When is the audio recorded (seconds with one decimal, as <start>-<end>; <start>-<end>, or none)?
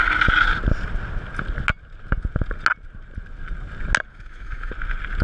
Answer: 0.0-4.1; 4.7-5.2